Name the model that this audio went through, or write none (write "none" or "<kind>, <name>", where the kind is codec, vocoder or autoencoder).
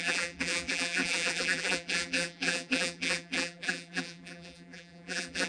vocoder, BigVGAN v2